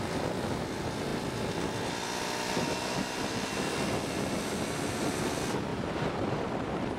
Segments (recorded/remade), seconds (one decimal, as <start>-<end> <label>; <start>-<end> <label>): 0.0-5.7 recorded; 5.7-7.0 remade